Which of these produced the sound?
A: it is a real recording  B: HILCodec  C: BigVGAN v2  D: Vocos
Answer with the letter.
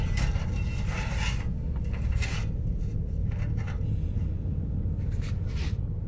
A